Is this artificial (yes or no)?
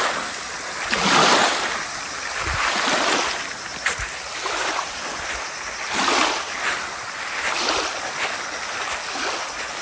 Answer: no